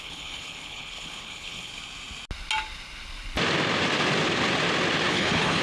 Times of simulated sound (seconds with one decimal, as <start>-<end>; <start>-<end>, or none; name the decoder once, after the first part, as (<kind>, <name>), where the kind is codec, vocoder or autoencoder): 0.0-1.7 (codec, HILCodec); 5.1-5.6